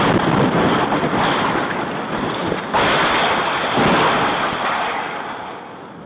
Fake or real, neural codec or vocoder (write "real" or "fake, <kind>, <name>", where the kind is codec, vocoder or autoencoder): real